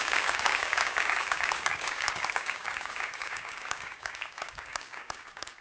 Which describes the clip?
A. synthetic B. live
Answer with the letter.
A